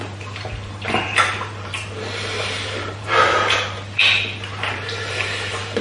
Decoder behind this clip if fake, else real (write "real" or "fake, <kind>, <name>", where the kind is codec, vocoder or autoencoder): fake, vocoder, BigVGAN v2